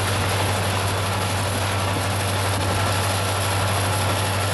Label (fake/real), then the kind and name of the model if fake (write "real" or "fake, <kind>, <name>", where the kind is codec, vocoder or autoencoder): real